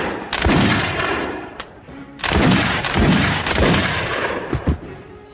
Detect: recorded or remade remade